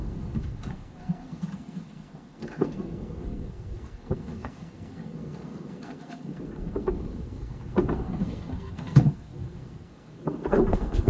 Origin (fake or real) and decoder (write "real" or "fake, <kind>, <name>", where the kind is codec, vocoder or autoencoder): fake, codec, SNAC